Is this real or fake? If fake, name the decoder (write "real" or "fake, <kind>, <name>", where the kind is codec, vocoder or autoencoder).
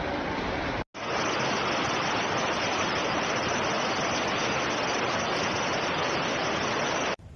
real